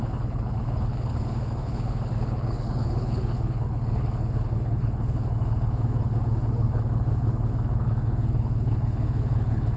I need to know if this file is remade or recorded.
remade